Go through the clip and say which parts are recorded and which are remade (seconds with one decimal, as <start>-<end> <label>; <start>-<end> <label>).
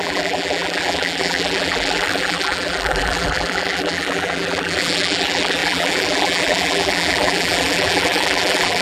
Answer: 0.0-8.8 remade